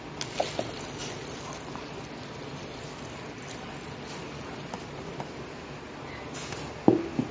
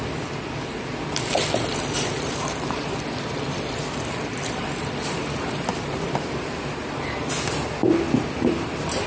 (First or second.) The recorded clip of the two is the first